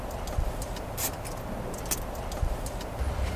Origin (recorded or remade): recorded